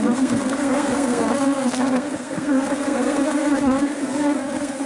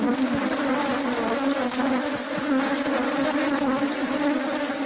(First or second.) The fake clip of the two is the first